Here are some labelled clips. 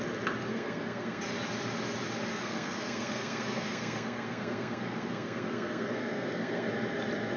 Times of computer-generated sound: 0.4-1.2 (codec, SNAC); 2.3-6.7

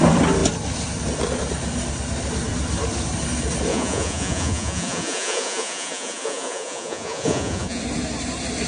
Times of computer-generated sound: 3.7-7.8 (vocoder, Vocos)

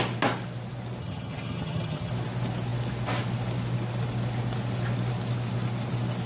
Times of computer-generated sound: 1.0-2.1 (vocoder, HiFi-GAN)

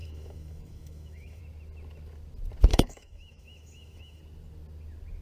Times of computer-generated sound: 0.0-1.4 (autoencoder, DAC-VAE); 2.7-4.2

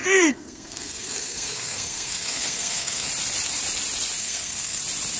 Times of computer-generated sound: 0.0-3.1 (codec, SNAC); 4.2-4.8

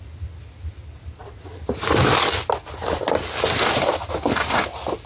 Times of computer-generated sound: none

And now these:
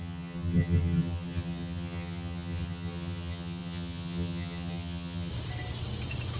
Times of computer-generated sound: 0.0-5.3 (vocoder, HiFi-GAN)